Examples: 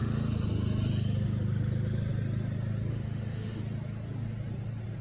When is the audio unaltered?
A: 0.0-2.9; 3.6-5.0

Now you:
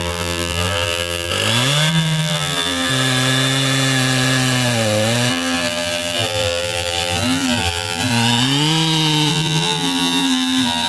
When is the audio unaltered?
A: 1.3-1.9; 2.9-5.3; 8.1-9.3

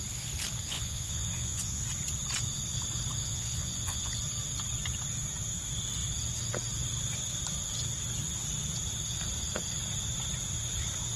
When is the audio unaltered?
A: 0.0-0.7; 1.8-3.2; 4.1-11.2

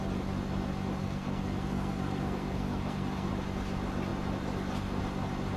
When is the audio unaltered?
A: 0.0-1.0; 3.3-5.6